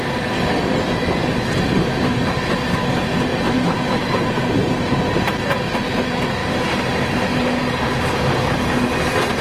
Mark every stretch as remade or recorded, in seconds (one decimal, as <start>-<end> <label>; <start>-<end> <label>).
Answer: 0.0-3.3 recorded; 3.3-4.7 remade; 4.7-9.4 recorded